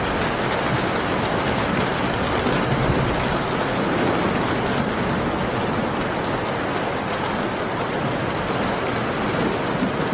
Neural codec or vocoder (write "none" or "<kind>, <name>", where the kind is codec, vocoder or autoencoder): none